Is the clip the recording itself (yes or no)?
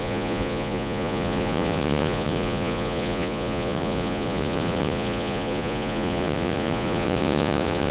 no